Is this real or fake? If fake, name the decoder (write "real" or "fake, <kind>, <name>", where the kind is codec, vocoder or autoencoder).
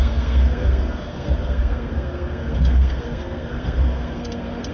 fake, codec, SNAC